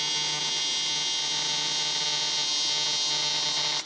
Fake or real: real